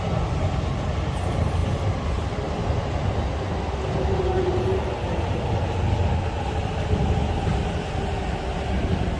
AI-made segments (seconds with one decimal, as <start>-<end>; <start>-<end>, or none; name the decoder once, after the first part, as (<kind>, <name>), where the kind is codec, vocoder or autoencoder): none